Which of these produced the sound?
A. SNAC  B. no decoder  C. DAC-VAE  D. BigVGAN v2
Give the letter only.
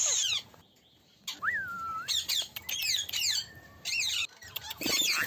B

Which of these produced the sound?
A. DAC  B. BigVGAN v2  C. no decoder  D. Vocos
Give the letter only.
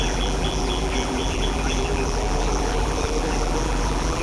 B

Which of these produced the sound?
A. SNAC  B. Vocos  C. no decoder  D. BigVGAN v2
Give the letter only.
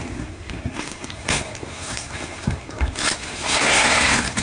A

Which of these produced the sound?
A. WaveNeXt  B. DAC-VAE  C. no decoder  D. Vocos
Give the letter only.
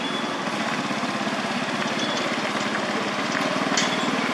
C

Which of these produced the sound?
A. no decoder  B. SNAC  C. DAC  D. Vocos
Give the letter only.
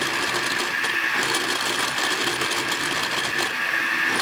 A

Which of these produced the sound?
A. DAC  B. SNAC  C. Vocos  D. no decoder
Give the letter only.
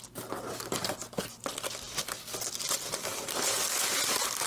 D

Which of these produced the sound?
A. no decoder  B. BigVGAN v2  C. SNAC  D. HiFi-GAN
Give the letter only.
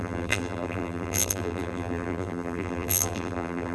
B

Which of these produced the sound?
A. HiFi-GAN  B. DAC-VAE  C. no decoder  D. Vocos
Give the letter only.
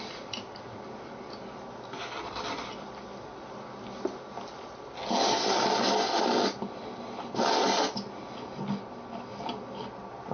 C